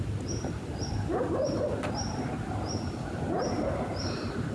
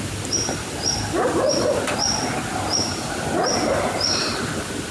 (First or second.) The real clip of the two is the second